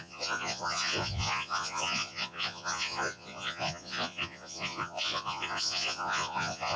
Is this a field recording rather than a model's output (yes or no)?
no